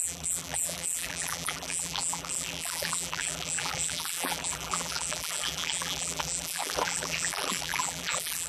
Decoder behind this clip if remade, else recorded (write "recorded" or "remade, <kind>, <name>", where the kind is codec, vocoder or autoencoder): remade, vocoder, BigVGAN v2